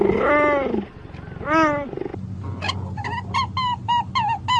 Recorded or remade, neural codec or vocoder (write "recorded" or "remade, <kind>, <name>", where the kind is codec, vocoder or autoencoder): recorded